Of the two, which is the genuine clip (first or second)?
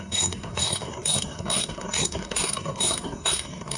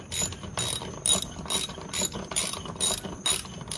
second